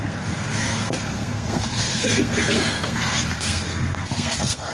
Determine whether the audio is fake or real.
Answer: fake